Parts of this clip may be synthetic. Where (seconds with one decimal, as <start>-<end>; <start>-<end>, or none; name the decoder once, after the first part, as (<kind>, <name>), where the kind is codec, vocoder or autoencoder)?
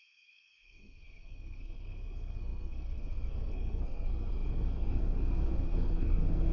0.0-6.5 (codec, SNAC)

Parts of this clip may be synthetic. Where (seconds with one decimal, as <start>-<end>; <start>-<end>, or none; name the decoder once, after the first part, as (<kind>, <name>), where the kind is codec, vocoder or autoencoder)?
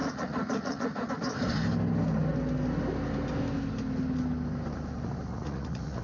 0.0-1.1 (vocoder, Vocos); 5.3-6.0